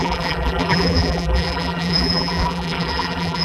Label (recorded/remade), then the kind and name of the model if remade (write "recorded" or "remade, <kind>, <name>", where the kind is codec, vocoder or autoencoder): remade, vocoder, BigVGAN v2